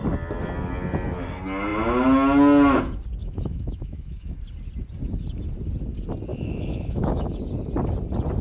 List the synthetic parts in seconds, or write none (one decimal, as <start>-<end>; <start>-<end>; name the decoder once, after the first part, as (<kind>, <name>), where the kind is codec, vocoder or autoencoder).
3.2-4.4 (autoencoder, DAC-VAE); 6.3-7.4